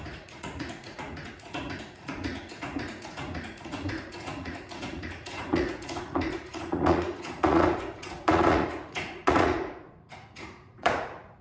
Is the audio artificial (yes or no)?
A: yes